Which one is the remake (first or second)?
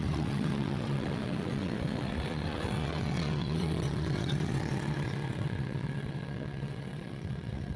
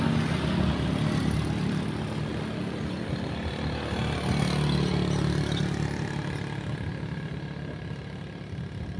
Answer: first